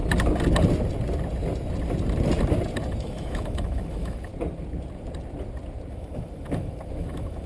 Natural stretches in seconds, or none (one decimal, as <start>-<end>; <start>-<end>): 0.0-3.0; 4.3-5.9